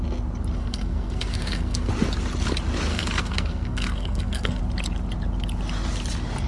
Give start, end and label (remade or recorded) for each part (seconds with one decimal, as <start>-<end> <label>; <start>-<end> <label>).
0.0-0.6 recorded; 0.6-1.9 remade; 1.9-2.9 recorded; 2.9-4.6 remade; 4.6-6.5 recorded